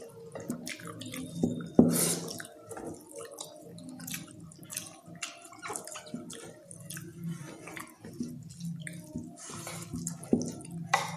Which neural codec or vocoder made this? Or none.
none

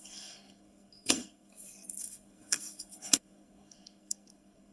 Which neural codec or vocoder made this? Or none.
codec, SNAC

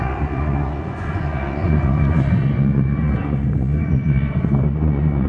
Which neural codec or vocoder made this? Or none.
vocoder, Vocos